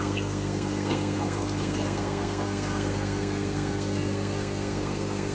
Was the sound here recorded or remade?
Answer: remade